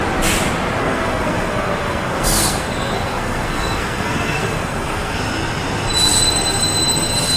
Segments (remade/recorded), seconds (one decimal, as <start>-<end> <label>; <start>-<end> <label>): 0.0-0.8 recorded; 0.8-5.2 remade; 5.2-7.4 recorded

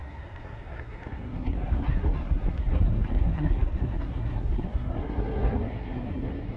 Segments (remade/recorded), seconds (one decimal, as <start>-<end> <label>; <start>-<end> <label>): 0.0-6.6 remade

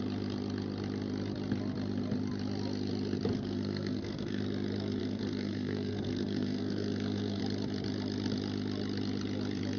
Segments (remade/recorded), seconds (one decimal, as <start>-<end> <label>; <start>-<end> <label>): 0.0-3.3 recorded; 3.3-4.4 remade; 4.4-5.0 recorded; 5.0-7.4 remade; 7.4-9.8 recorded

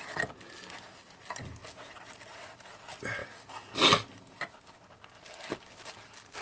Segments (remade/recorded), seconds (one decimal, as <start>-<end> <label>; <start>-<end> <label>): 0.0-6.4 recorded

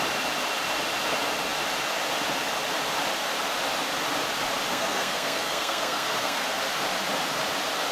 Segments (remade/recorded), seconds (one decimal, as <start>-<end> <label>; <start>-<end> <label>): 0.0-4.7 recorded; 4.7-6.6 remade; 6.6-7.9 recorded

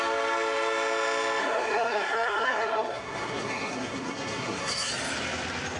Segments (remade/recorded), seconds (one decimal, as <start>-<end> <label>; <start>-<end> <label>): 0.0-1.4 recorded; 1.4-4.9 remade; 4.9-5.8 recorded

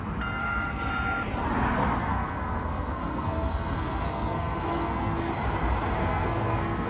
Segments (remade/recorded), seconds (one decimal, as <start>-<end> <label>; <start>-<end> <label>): 0.0-0.4 recorded; 0.4-0.9 remade; 0.9-2.0 recorded; 2.0-5.3 remade; 5.3-6.0 recorded; 6.0-6.9 remade